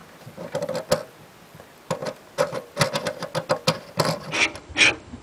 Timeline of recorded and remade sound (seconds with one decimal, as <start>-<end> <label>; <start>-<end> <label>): 0.0-5.2 recorded